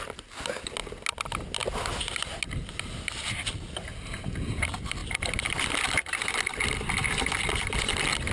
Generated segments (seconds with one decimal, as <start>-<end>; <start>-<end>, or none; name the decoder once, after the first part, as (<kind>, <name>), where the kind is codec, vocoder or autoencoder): none